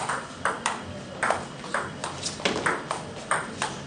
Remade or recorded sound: recorded